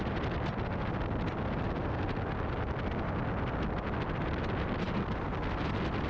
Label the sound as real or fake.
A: real